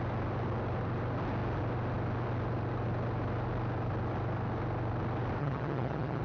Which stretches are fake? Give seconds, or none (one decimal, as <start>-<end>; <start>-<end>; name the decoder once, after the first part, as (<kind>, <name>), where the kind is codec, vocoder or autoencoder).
5.4-6.2 (vocoder, HiFi-GAN)